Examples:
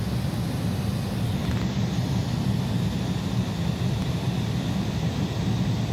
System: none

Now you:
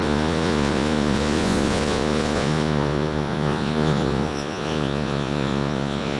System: vocoder, Vocos